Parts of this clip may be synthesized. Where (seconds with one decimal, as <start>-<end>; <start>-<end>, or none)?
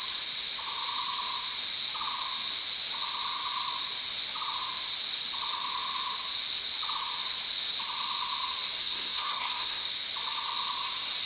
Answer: 8.8-9.9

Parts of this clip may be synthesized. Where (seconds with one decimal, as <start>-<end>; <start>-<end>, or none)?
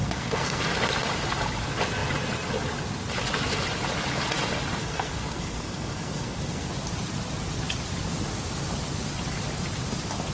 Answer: 0.0-0.6; 4.8-6.7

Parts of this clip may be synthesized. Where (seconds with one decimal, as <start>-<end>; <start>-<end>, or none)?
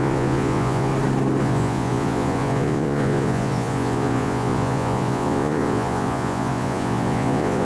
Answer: 0.0-0.9; 1.4-7.6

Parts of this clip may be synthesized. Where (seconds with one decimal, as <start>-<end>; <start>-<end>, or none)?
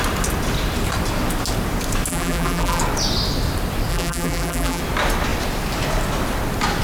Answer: 2.1-2.8; 3.9-4.8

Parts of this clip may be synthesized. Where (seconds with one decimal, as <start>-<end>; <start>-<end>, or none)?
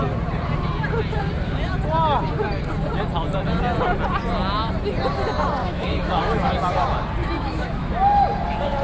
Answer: 5.6-6.5; 7.2-7.9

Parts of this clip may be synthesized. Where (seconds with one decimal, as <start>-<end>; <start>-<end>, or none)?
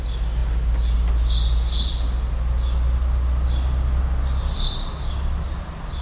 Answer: none